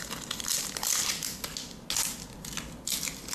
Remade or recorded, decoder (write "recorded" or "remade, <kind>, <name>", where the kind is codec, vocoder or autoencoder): recorded